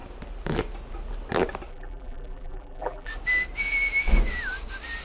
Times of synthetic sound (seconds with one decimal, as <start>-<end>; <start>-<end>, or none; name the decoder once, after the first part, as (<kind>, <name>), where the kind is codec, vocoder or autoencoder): 1.7-3.1 (vocoder, BigVGAN v2)